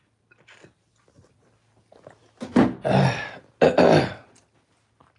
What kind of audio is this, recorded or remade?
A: recorded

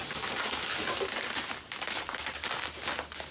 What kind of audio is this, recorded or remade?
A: recorded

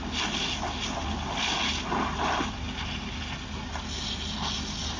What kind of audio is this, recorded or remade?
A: recorded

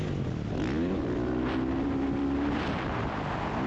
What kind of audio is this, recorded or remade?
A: recorded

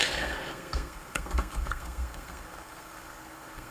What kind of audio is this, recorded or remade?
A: remade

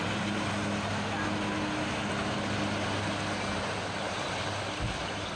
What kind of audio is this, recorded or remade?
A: recorded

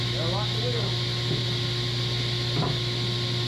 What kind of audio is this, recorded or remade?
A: recorded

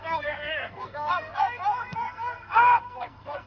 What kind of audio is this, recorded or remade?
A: remade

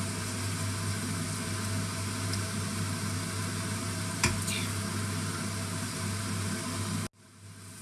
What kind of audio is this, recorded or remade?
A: recorded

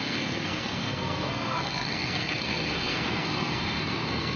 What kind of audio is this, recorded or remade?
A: remade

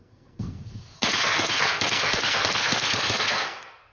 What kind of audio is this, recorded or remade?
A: remade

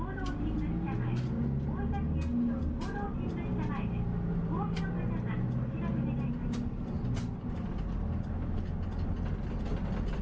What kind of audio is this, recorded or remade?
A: recorded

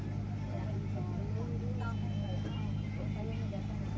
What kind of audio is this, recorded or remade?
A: recorded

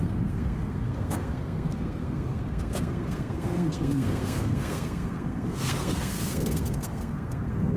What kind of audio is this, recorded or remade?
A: remade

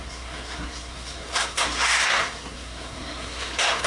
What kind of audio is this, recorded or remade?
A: remade